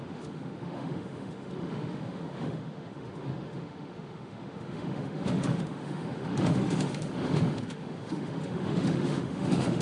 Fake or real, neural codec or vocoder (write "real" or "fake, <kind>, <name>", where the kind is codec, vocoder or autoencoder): fake, autoencoder, DAC-VAE